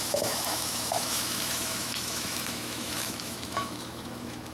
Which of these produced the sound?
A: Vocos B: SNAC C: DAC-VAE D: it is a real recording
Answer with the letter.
C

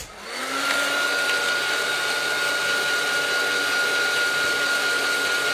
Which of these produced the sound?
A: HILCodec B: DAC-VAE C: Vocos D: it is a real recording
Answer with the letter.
D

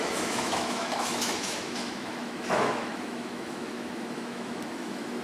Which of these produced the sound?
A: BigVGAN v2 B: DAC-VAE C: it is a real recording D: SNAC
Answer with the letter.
B